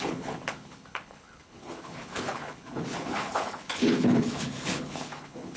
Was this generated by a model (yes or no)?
yes